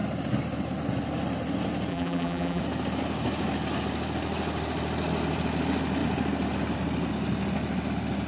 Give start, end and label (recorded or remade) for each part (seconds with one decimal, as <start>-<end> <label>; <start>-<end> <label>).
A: 0.0-1.9 recorded; 1.9-2.6 remade; 2.6-8.3 recorded